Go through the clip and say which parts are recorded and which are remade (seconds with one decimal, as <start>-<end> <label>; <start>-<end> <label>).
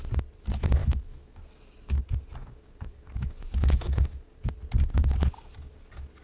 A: 0.0-0.8 recorded; 0.8-1.4 remade; 1.4-2.4 recorded; 2.4-4.2 remade; 4.2-6.2 recorded